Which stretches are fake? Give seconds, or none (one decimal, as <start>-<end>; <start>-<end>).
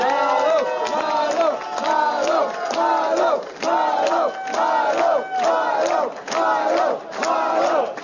none